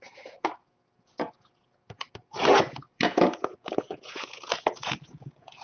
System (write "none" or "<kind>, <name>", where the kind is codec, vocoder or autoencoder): vocoder, Vocos